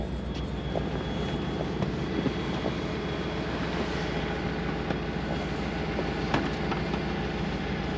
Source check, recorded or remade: recorded